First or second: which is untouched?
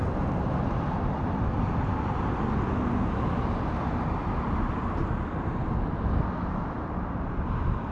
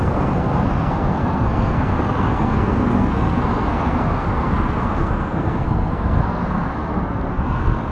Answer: first